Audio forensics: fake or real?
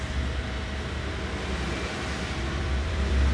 fake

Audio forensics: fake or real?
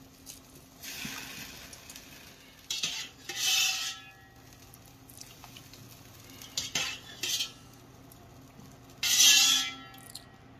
real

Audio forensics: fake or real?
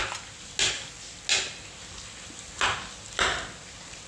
real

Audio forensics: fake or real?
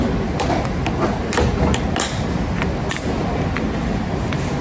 real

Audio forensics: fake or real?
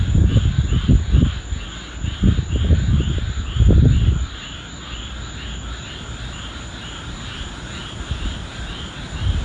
real